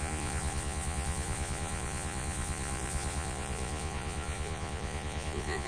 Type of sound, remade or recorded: remade